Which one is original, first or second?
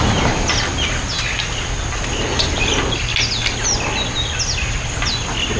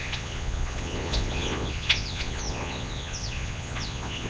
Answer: first